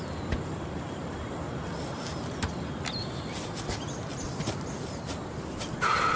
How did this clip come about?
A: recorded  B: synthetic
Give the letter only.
A